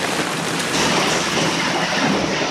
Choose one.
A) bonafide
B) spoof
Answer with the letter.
A